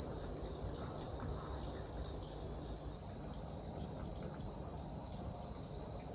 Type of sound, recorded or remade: recorded